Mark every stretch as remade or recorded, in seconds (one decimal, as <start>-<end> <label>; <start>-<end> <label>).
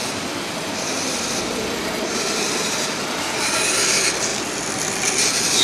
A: 0.0-3.4 remade; 3.4-4.3 recorded; 4.3-4.9 remade; 4.9-5.6 recorded